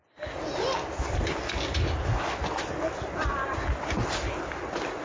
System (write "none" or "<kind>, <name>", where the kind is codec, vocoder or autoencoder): none